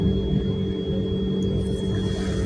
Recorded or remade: recorded